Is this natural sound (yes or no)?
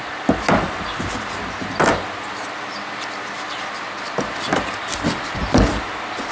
yes